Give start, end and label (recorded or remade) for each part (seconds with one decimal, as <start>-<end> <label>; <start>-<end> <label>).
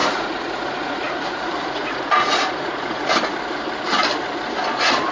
0.0-3.1 remade; 3.1-5.1 recorded